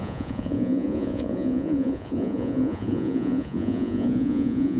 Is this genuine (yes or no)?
no